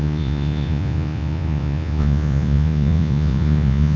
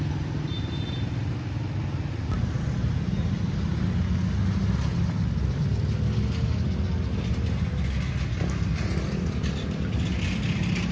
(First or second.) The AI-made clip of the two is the first